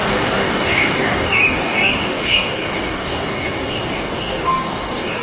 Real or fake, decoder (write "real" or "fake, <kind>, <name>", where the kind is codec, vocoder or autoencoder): fake, codec, DAC